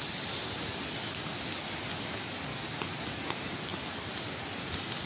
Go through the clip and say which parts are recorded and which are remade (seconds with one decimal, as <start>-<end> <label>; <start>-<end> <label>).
0.0-3.7 recorded; 3.7-4.3 remade; 4.3-5.1 recorded